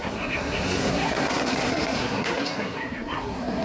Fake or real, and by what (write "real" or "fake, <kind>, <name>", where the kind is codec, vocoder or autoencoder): fake, codec, SNAC